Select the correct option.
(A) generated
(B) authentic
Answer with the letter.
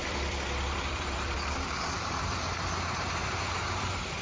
A